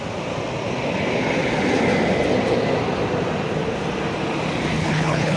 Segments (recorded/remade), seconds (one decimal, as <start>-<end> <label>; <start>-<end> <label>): 0.0-4.7 recorded; 4.7-5.4 remade